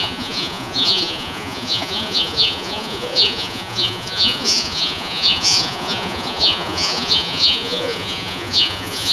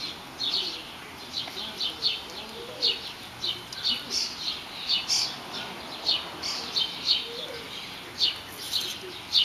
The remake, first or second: first